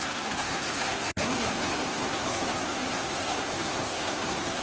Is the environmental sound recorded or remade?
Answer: remade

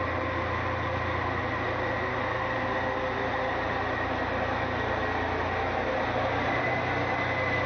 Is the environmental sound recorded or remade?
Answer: recorded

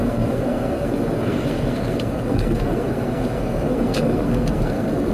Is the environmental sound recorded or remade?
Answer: remade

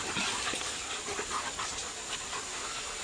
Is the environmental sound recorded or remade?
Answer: recorded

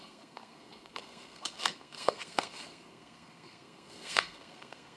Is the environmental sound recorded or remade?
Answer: remade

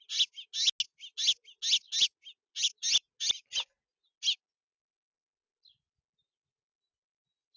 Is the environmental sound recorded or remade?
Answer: recorded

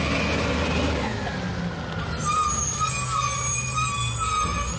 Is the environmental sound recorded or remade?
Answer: recorded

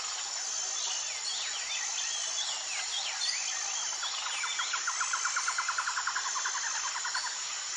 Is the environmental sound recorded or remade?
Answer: recorded